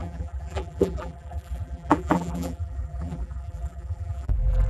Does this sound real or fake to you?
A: fake